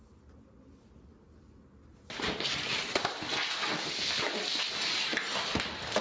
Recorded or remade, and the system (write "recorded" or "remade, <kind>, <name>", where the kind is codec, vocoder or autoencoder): recorded